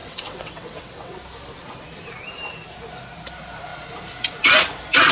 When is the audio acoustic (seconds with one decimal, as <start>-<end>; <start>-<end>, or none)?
1.2-5.1